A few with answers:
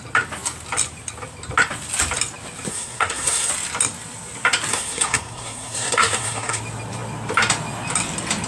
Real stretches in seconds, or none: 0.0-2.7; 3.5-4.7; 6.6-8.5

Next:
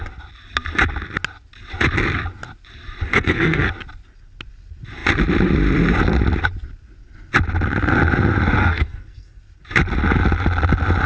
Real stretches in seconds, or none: 0.0-3.1; 3.7-8.6; 9.4-11.1

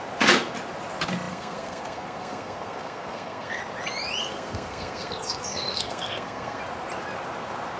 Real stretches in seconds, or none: 0.0-1.3; 3.6-4.2; 6.6-7.8

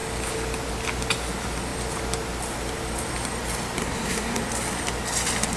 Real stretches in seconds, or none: 0.0-3.8; 4.4-5.6

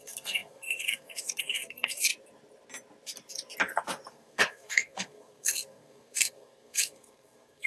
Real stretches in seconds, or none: 2.1-4.1

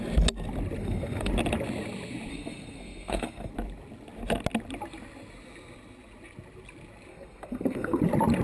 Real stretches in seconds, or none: 0.0-0.8; 1.3-2.3; 3.5-7.1; 8.0-8.4

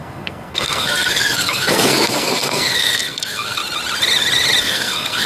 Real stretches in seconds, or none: 3.6-4.6

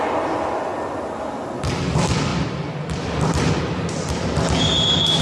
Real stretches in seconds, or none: 0.0-5.2